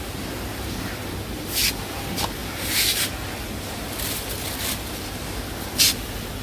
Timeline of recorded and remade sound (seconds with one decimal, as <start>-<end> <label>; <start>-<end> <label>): 0.0-6.4 recorded